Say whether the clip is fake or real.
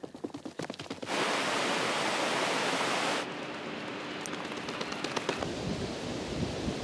real